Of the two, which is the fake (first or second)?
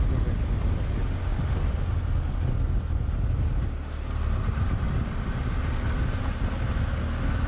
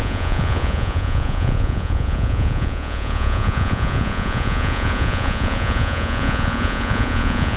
second